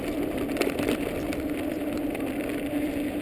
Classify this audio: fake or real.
real